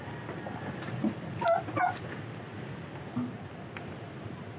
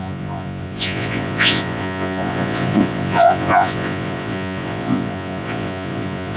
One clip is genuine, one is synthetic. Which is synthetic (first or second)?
second